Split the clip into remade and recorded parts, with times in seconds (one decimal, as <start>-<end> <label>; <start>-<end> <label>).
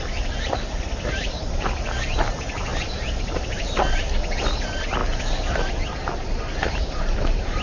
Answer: 0.0-7.6 recorded